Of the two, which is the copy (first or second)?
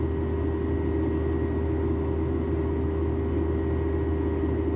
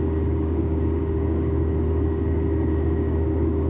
second